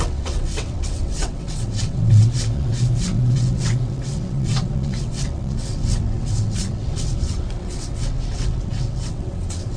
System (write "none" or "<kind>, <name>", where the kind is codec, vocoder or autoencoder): vocoder, WaveNeXt